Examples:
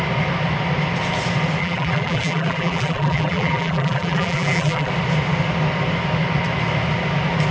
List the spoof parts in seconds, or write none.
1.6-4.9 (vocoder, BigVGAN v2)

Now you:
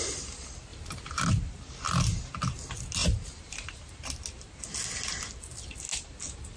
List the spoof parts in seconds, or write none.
0.7-1.3 (vocoder, BigVGAN v2); 3.0-3.9

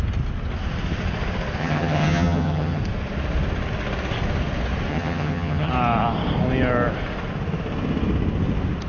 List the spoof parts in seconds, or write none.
1.6-2.8 (vocoder, HiFi-GAN); 4.9-5.7

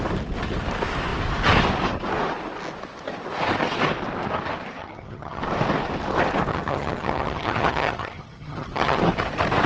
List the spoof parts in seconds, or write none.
4.8-5.4 (vocoder, HiFi-GAN); 6.5-9.0

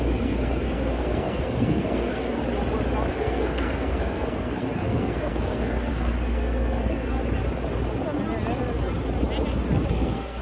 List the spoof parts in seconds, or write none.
0.0-2.4 (codec, SNAC); 3.1-7.2; 9.9-10.4

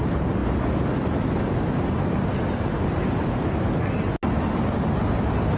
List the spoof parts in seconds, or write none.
none